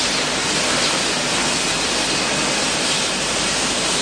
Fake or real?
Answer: real